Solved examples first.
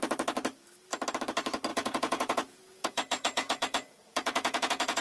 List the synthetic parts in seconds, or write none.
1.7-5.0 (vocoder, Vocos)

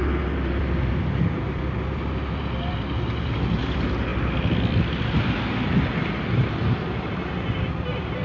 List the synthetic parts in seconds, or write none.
none

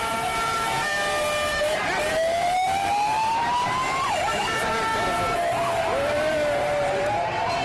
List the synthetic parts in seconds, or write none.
0.0-0.9 (vocoder, BigVGAN v2); 1.5-4.9; 5.8-7.6

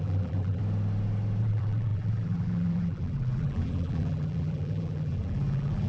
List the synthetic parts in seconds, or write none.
0.0-0.6 (vocoder, BigVGAN v2); 1.4-5.9